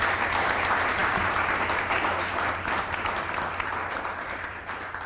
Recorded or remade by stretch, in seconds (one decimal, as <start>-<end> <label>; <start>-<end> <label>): 0.0-5.1 recorded